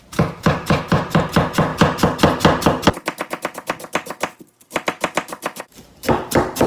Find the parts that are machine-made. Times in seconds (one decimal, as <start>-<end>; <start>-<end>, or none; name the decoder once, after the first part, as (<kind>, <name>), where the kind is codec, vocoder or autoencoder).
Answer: 0.0-1.7 (vocoder, BigVGAN v2); 5.6-6.7